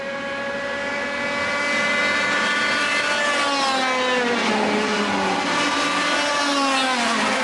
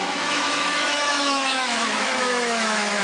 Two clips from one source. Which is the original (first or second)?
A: first